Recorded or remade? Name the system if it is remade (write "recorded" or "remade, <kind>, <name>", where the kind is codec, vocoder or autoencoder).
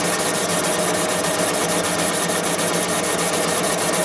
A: recorded